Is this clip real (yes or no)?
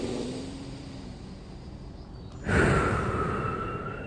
yes